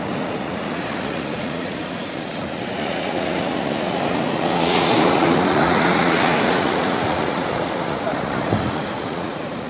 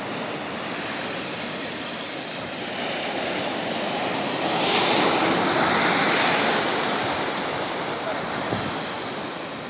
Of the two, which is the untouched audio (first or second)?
second